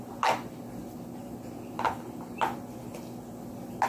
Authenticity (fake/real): real